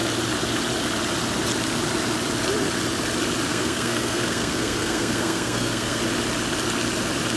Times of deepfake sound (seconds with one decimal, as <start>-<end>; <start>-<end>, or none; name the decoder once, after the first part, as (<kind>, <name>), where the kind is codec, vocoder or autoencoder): 3.5-6.0 (codec, SNAC)